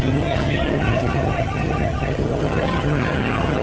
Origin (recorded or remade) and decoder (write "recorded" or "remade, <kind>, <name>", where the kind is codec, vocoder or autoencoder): remade, vocoder, HiFi-GAN